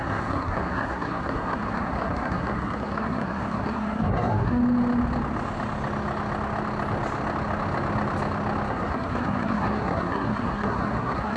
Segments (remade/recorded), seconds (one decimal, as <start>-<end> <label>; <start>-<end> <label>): 0.0-4.6 remade; 4.6-8.7 recorded; 8.7-11.4 remade

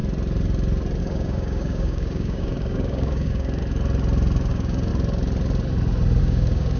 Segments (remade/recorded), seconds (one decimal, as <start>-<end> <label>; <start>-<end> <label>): 0.0-1.0 recorded; 1.0-3.6 remade; 3.6-4.5 recorded; 4.5-4.9 remade; 4.9-6.2 recorded; 6.2-6.8 remade

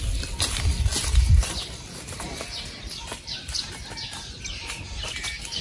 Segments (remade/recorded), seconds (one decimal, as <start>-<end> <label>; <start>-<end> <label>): 0.0-5.6 recorded

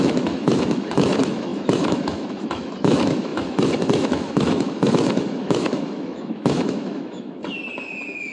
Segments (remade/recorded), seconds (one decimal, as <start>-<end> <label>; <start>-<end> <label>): 0.0-7.4 remade; 7.4-8.3 recorded